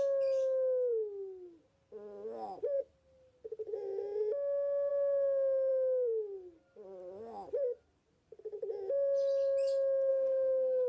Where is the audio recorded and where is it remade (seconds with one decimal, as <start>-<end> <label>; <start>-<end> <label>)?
0.0-10.1 recorded; 10.1-10.9 remade

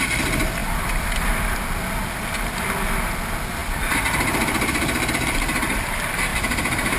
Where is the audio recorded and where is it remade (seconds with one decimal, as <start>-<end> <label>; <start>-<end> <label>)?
0.0-0.6 recorded; 0.6-1.4 remade; 1.4-3.6 recorded; 3.6-5.1 remade; 5.1-6.3 recorded; 6.3-7.0 remade

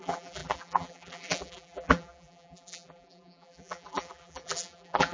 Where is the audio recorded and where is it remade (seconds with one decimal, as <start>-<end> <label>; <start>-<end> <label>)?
0.0-5.1 remade

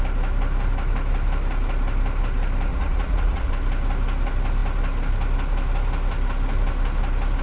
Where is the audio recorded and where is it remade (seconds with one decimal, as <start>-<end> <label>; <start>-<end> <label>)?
0.0-2.7 recorded; 2.7-3.5 remade; 3.5-7.4 recorded

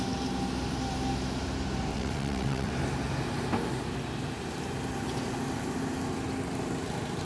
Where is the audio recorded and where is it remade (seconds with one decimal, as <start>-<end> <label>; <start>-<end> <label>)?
0.0-1.9 recorded; 1.9-2.7 remade; 2.7-7.3 recorded

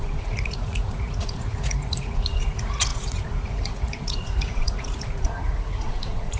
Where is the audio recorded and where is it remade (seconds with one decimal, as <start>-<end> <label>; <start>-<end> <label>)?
0.0-6.4 remade

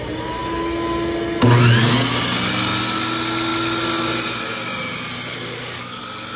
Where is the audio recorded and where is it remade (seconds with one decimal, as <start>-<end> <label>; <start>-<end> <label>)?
0.0-5.3 recorded; 5.3-6.0 remade; 6.0-6.4 recorded

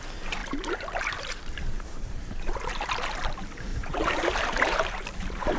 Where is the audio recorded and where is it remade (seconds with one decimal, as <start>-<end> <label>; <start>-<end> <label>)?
0.0-0.4 recorded; 0.4-2.7 remade; 2.7-3.7 recorded; 3.7-5.6 remade